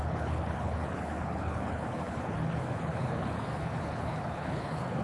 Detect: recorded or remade remade